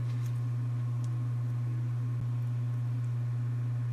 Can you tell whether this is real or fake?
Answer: real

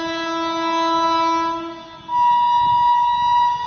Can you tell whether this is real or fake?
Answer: real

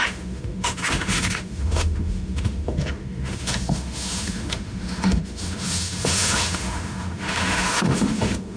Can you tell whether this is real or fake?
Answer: fake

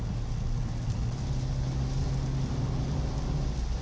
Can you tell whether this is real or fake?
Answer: real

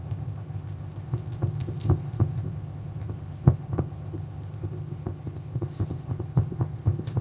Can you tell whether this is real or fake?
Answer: fake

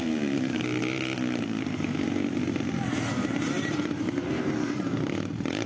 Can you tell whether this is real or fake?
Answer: fake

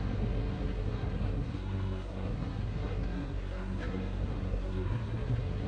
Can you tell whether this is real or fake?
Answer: fake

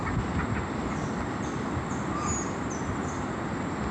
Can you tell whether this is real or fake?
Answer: real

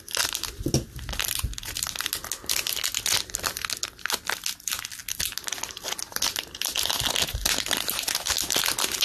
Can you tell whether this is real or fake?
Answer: real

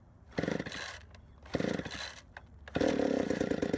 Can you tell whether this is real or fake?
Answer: real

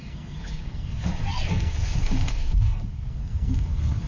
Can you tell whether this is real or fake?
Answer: fake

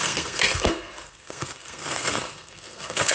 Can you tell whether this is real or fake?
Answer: fake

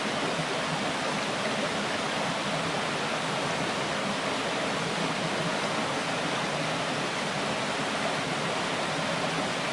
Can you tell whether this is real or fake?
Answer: real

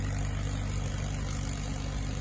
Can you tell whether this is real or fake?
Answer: real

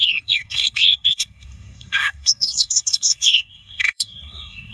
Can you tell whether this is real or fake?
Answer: fake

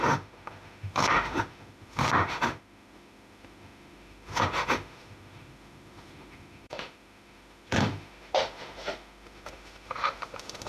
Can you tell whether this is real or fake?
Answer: fake